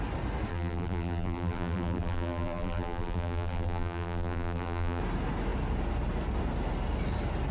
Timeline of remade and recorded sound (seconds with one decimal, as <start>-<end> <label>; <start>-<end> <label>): 0.0-0.5 recorded; 0.5-5.0 remade; 5.0-7.5 recorded